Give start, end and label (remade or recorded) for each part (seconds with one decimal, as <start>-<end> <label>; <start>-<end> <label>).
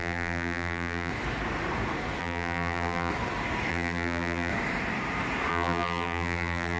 0.0-1.1 remade; 1.1-2.2 recorded; 2.2-3.1 remade; 3.1-3.7 recorded; 3.7-4.5 remade; 4.5-5.5 recorded; 5.5-6.8 remade